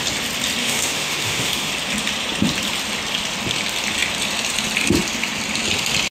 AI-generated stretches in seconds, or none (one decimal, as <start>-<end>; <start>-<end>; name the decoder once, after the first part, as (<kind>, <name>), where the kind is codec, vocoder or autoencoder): 0.6-1.7 (autoencoder, DAC-VAE)